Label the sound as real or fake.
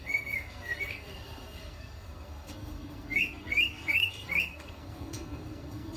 fake